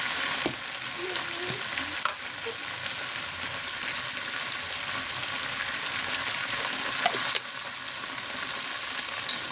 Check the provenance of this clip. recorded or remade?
recorded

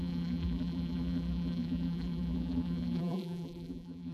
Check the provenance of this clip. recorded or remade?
remade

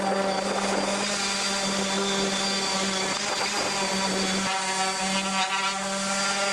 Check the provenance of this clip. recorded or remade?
recorded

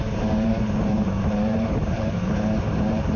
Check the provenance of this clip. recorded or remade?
remade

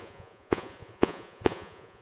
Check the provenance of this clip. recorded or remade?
remade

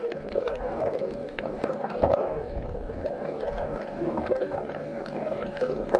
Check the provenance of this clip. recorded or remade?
remade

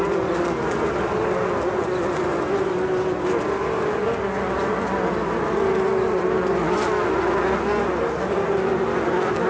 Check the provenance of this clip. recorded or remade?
recorded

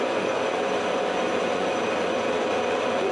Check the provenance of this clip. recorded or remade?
remade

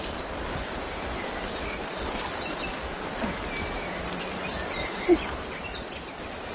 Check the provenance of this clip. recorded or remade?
recorded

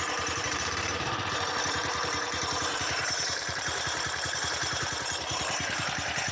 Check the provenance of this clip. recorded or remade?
remade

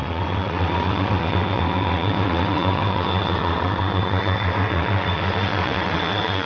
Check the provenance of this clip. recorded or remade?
remade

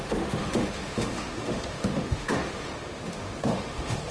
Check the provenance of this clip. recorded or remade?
remade